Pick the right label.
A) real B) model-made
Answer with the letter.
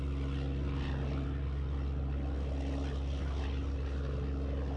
A